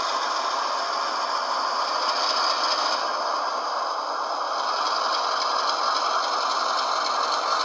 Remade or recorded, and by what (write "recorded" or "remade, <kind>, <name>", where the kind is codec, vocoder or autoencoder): recorded